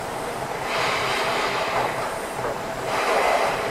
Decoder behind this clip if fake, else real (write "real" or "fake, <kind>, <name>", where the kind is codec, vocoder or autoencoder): fake, vocoder, BigVGAN v2